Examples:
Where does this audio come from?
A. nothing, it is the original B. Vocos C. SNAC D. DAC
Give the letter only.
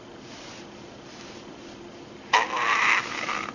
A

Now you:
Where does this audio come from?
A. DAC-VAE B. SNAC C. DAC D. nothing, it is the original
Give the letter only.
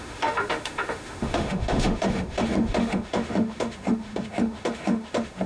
A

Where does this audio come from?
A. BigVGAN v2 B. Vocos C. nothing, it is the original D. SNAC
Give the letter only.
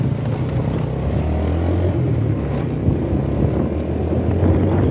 C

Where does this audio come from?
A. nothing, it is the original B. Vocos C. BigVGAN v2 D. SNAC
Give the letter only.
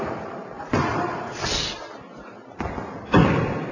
C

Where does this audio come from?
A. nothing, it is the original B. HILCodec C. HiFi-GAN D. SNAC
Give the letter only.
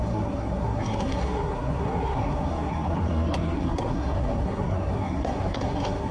D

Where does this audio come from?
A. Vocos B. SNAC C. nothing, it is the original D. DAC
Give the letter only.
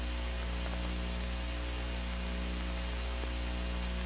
C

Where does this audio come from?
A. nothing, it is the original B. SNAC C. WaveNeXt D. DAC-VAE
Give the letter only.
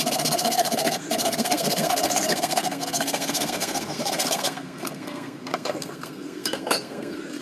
B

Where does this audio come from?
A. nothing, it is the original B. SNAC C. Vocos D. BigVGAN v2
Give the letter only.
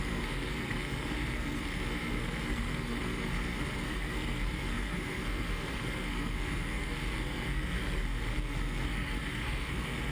B